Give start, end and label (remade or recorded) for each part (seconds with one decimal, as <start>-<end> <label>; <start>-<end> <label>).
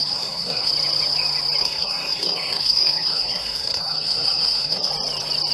0.0-0.7 remade; 0.7-1.6 recorded; 1.6-4.9 remade; 4.9-5.5 recorded